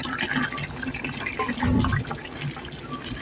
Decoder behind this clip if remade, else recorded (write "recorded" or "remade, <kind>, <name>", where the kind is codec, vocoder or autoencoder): recorded